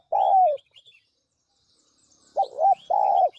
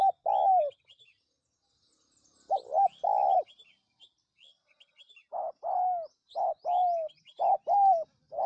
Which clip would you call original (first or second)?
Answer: second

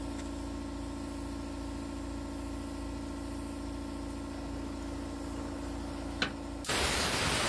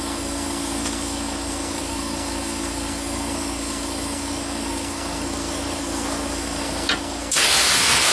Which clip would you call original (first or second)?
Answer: first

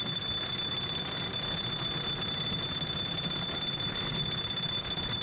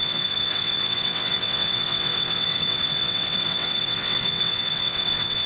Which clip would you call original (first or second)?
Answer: first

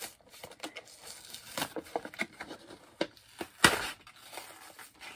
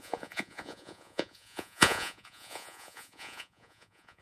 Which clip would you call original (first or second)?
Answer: first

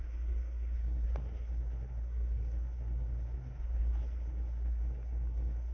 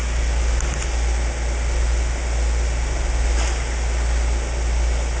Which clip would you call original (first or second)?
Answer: second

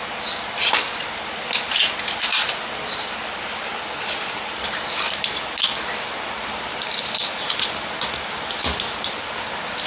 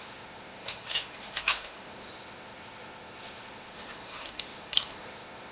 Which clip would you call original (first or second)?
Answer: first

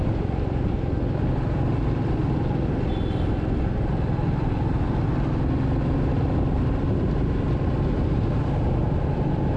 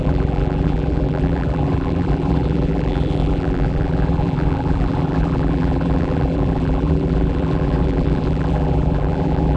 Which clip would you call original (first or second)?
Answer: first